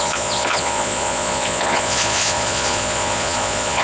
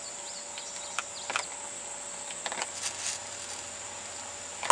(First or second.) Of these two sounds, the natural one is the second